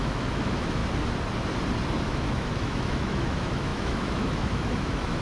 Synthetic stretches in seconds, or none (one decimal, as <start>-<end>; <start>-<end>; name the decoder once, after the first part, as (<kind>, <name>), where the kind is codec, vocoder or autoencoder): 0.0-0.8 (autoencoder, DAC-VAE); 2.0-5.2